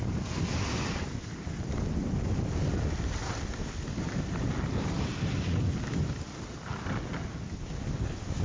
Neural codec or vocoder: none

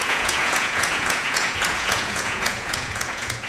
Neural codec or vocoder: vocoder, Vocos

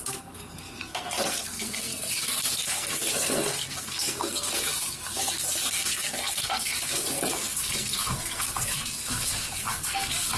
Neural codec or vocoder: codec, SNAC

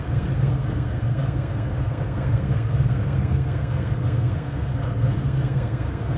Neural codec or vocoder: codec, SNAC